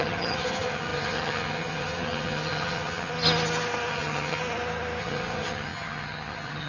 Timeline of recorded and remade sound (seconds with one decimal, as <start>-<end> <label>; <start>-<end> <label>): 0.0-3.1 remade; 3.1-3.9 recorded; 3.9-4.4 remade; 4.4-5.0 recorded; 5.0-6.7 remade